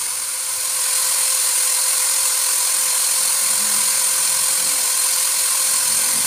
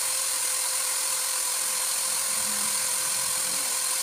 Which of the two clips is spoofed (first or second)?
second